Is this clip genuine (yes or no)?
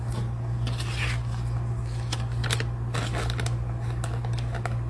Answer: yes